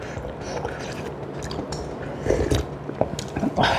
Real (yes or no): yes